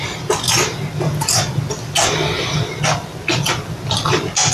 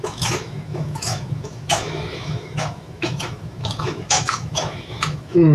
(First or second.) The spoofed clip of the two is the second